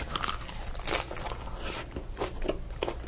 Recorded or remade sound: recorded